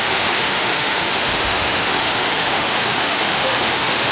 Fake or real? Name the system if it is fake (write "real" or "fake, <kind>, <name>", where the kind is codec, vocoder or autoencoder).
fake, autoencoder, DAC-VAE